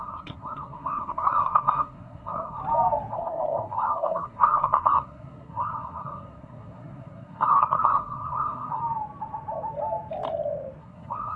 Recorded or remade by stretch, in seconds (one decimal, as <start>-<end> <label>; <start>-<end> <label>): 0.0-2.6 remade; 2.6-3.1 recorded; 3.1-8.8 remade; 8.8-10.8 recorded; 10.8-11.4 remade